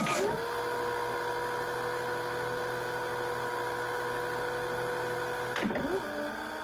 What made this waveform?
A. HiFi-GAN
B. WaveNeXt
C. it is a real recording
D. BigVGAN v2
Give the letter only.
C